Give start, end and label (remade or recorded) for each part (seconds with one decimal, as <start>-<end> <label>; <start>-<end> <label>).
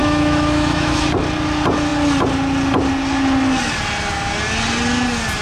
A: 0.0-1.1 remade; 1.1-5.4 recorded